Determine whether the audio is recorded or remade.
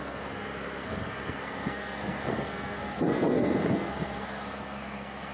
remade